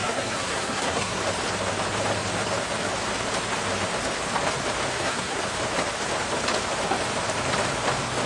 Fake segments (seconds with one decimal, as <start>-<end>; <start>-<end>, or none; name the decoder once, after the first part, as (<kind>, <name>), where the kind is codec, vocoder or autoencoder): 0.0-1.2 (codec, SNAC); 4.9-5.4